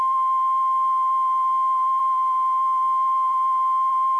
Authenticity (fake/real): fake